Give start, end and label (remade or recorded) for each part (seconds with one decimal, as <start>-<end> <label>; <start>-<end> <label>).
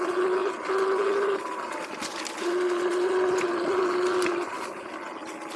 0.0-5.6 recorded